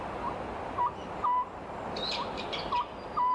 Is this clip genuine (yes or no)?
yes